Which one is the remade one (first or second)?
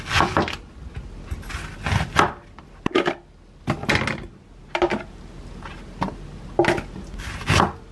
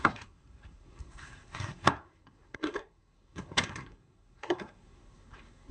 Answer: second